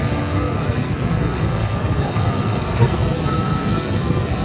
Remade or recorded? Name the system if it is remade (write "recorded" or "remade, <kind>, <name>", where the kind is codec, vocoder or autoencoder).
remade, codec, SNAC